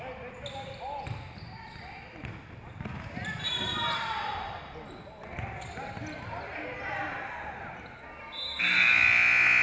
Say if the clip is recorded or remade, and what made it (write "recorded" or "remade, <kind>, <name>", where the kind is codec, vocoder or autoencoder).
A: recorded